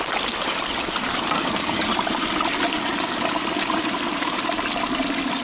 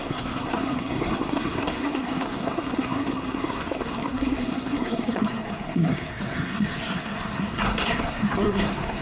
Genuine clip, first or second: first